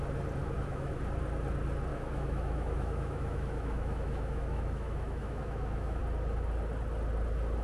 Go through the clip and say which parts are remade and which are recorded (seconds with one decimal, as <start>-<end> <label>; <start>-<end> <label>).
0.0-0.4 recorded; 0.4-1.0 remade; 1.0-1.9 recorded; 1.9-6.0 remade; 6.0-7.6 recorded

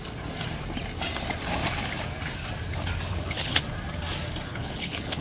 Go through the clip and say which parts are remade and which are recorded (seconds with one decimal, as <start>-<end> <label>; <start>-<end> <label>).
0.0-3.1 recorded; 3.1-3.6 remade; 3.6-4.5 recorded; 4.5-5.2 remade

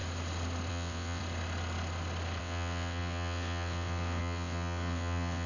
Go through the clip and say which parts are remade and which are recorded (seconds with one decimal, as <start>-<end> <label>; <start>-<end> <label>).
0.0-0.7 recorded; 0.7-1.2 remade; 1.2-2.4 recorded; 2.4-5.5 remade

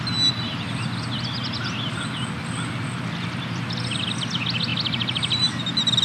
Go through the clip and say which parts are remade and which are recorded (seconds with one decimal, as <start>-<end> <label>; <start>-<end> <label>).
0.0-6.0 recorded

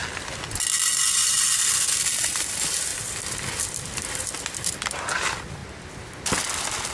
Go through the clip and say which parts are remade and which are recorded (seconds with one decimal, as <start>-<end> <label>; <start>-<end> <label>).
0.0-1.2 recorded; 1.2-5.6 remade; 5.6-6.9 recorded

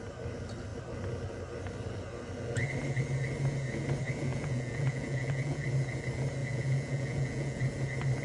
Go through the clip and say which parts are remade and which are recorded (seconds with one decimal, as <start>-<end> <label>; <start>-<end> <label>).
0.0-4.3 recorded; 4.3-5.6 remade; 5.6-6.4 recorded; 6.4-7.6 remade; 7.6-8.2 recorded